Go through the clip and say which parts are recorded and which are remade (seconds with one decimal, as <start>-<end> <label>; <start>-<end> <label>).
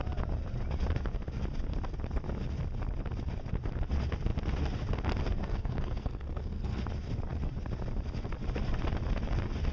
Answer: 0.0-5.4 recorded; 5.4-6.8 remade; 6.8-9.7 recorded